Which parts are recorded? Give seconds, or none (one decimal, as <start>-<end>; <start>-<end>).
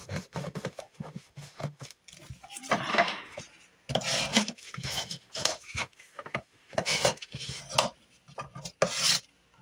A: 2.0-2.9; 3.4-4.3; 7.6-9.6